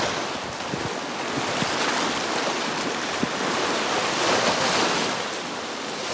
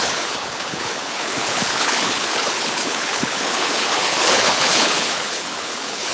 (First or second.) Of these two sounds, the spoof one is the second